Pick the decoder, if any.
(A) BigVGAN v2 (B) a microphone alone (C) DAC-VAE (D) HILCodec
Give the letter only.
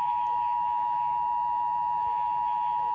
C